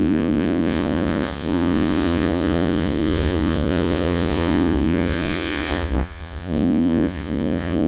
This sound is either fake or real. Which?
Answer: fake